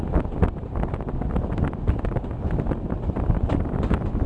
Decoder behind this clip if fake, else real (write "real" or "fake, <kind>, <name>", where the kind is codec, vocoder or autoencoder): real